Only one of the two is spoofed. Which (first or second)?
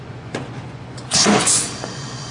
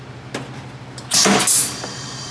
first